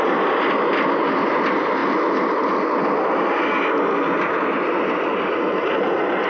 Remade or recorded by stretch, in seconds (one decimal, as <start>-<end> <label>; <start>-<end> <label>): 0.0-6.3 recorded